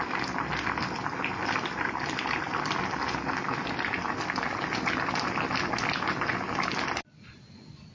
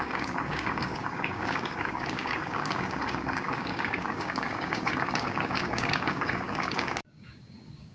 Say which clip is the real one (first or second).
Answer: first